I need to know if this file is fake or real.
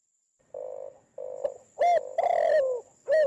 real